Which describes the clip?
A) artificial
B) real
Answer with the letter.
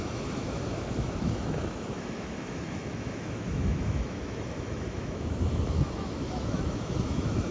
A